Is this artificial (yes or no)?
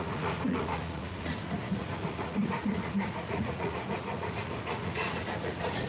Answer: yes